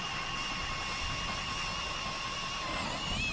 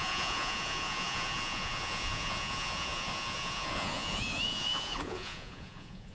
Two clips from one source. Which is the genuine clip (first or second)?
first